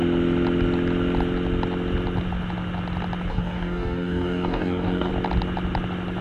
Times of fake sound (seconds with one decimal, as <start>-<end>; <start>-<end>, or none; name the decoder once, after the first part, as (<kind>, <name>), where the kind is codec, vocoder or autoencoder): 3.3-5.1 (codec, DAC)